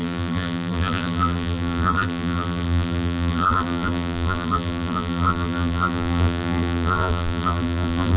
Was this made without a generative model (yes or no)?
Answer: no